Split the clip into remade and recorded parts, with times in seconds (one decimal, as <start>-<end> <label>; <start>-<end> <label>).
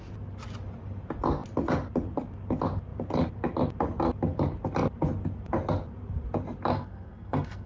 0.0-6.7 recorded; 6.7-7.7 remade